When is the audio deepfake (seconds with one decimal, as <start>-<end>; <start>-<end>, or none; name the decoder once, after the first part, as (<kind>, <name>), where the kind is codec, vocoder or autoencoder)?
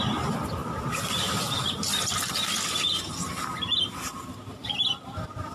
none